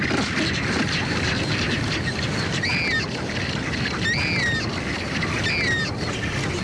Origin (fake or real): real